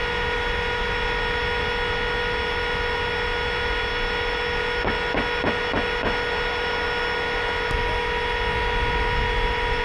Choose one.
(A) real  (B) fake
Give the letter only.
A